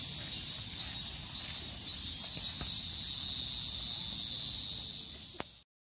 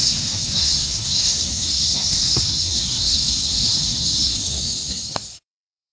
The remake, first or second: second